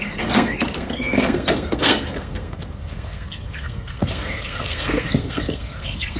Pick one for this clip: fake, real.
fake